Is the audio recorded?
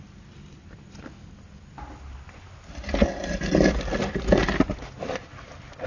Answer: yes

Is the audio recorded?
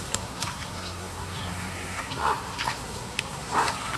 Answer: no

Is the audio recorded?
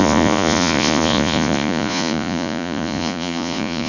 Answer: no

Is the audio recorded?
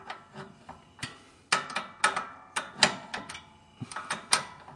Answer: yes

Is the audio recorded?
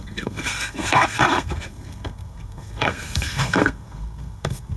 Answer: no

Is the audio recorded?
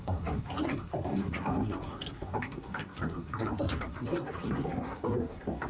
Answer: no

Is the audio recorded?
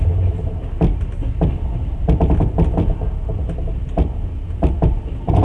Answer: yes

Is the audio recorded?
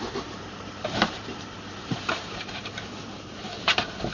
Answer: no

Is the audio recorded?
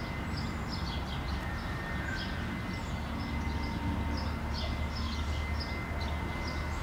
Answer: yes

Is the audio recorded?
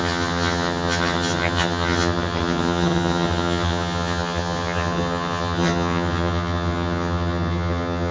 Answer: no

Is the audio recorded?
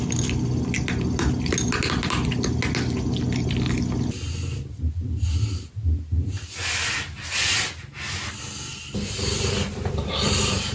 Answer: yes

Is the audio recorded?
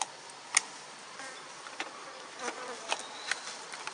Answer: yes